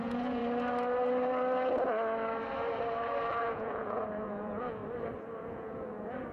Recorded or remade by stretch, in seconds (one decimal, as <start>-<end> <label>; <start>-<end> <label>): 0.0-0.4 remade; 0.4-3.4 recorded; 3.4-4.8 remade; 4.8-5.4 recorded; 5.4-6.3 remade